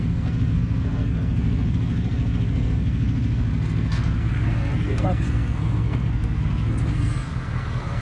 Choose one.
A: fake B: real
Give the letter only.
A